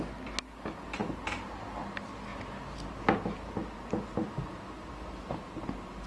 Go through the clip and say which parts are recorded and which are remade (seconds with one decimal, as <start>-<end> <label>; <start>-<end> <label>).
0.0-6.1 recorded